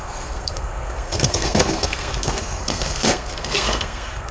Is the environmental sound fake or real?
fake